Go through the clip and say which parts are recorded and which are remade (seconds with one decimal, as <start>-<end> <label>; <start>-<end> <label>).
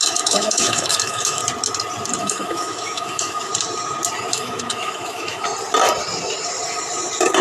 0.0-1.4 remade; 1.4-2.2 recorded; 2.2-3.5 remade; 3.5-4.3 recorded; 4.3-5.5 remade; 5.5-7.4 recorded